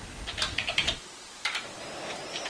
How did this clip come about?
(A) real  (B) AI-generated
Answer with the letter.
A